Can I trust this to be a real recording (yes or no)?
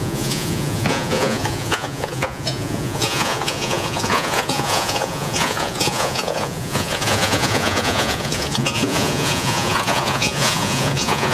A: no